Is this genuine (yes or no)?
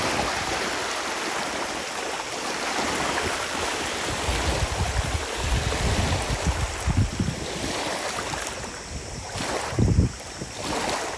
yes